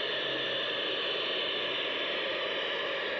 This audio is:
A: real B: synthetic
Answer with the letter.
A